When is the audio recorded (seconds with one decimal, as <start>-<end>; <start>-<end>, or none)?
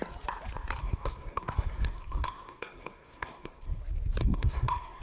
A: 0.0-0.8; 3.8-4.2